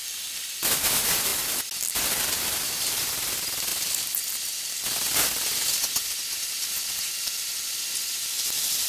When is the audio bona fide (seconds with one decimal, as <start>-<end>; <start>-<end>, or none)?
0.0-8.9